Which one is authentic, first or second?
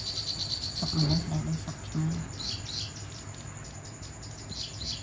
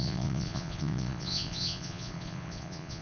first